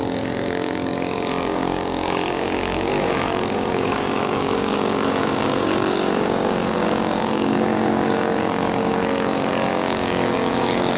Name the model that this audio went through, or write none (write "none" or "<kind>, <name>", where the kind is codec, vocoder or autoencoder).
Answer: codec, DAC